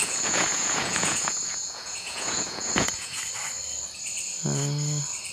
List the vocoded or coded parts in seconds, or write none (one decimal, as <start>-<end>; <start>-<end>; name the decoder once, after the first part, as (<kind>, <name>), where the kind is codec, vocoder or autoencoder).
0.0-3.2 (vocoder, Vocos)